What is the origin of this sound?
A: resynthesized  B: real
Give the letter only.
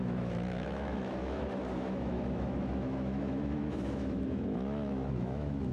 A